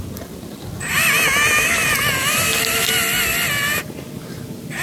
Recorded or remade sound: recorded